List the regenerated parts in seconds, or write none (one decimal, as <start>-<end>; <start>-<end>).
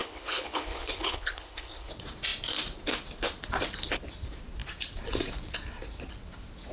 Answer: 0.0-1.9